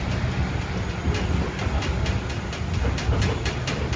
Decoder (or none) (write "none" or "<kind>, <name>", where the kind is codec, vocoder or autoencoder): none